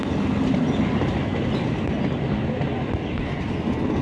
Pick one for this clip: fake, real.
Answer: real